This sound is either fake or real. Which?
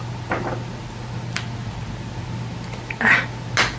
real